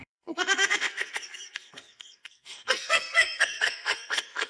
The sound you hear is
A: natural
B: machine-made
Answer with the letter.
B